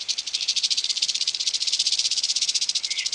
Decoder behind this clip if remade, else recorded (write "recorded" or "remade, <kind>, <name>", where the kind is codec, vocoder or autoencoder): remade, vocoder, BigVGAN v2